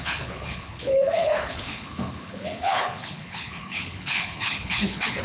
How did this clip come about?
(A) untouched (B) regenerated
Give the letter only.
B